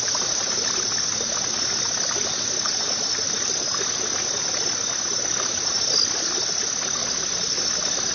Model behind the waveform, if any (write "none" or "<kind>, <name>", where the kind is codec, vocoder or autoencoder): none